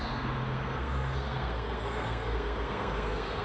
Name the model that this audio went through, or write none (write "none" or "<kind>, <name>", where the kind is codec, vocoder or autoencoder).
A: codec, SNAC